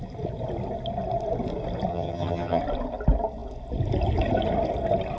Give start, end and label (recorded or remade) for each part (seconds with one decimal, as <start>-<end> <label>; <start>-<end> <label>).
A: 0.0-1.9 recorded; 1.9-2.6 remade; 2.6-5.2 recorded